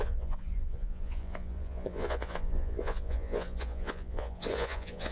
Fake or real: fake